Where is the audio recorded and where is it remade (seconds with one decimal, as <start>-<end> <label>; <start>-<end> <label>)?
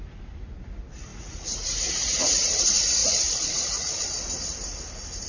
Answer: 0.0-1.1 recorded; 1.1-2.3 remade; 2.3-3.0 recorded; 3.0-4.0 remade; 4.0-5.3 recorded